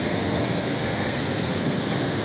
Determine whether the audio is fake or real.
fake